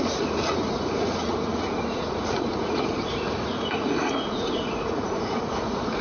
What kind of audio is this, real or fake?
fake